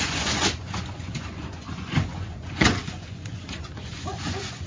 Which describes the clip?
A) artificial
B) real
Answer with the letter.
A